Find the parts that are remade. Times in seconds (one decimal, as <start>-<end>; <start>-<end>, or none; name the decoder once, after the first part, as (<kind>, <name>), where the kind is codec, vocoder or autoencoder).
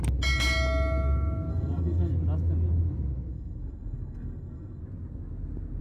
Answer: 1.5-2.1 (codec, SNAC); 3.3-4.8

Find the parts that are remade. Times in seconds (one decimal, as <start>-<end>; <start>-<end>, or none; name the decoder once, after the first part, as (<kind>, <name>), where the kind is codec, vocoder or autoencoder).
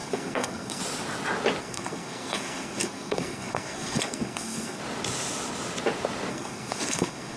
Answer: 0.0-0.8 (codec, SNAC); 1.6-4.8; 6.3-7.4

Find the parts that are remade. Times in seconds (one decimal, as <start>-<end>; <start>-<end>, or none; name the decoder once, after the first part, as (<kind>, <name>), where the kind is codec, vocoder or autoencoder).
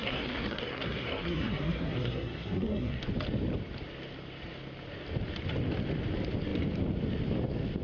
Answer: 0.0-3.0 (codec, SNAC)